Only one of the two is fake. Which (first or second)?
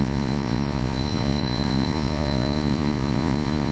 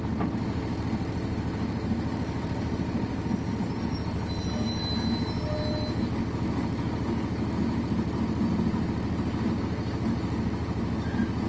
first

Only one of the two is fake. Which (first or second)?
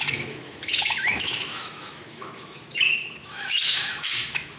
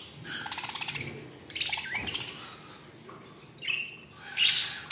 first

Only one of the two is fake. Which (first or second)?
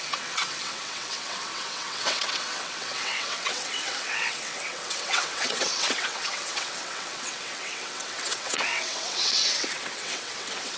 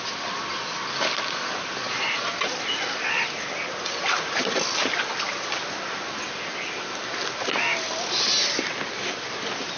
first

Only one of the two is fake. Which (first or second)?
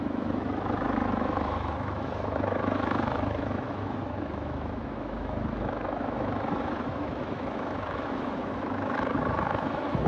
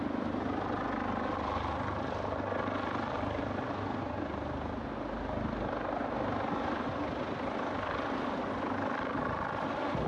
first